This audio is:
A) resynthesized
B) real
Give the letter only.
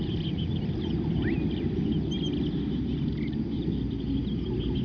B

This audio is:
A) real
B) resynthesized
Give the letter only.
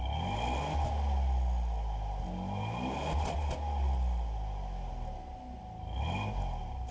A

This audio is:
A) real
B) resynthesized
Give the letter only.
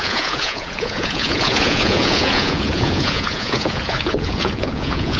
B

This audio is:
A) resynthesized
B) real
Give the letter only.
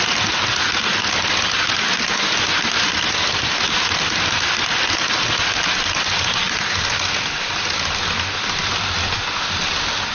B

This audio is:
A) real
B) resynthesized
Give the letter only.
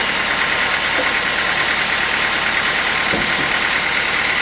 A